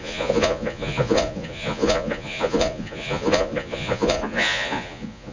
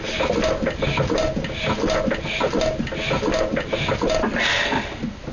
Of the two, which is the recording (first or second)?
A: second